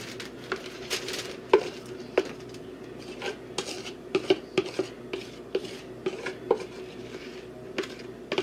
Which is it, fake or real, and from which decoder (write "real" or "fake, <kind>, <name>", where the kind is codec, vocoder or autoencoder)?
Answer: real